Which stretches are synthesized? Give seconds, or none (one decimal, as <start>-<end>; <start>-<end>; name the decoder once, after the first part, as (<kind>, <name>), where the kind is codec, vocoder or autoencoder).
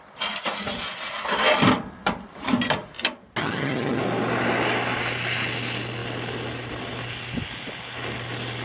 3.4-4.0 (vocoder, HiFi-GAN)